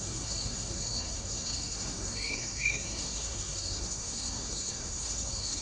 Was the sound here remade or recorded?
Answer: remade